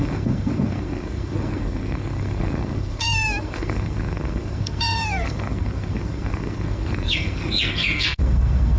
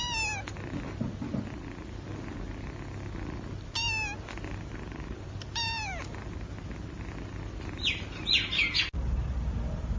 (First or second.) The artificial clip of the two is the first